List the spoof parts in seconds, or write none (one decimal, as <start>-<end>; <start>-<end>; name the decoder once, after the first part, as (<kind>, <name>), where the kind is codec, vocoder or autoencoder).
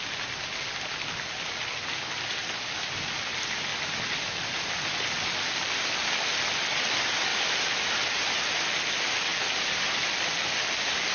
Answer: none